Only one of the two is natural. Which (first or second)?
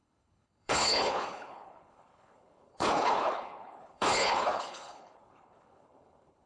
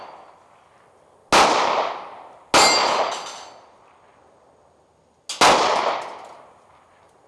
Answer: second